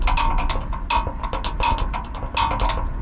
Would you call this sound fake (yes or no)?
no